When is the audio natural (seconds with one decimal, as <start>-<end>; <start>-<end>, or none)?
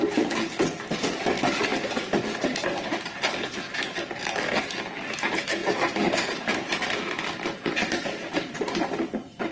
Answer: 0.0-5.6; 9.0-9.5